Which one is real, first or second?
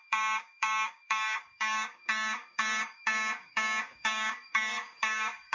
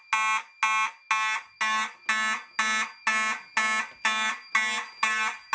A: second